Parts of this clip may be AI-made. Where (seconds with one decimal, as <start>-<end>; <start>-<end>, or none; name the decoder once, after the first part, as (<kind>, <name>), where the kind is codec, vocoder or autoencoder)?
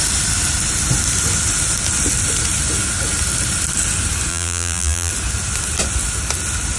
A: 4.3-5.1 (vocoder, BigVGAN v2)